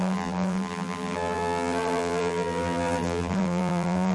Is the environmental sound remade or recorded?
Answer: remade